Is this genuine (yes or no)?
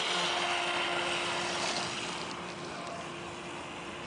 yes